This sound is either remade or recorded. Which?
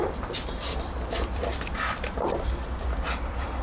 remade